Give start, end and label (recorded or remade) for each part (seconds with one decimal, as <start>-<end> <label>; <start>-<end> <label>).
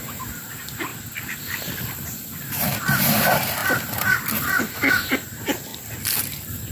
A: 0.0-0.9 remade; 0.9-2.0 recorded; 2.0-5.7 remade; 5.7-6.2 recorded; 6.2-6.7 remade